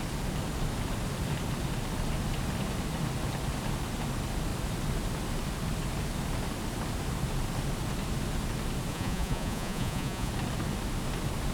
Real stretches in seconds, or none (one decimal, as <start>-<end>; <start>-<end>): 0.0-8.9; 10.3-11.5